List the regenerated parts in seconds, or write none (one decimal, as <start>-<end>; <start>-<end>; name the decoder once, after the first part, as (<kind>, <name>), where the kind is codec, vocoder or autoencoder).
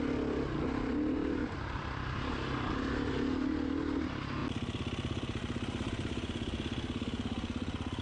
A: 1.2-2.3 (vocoder, BigVGAN v2)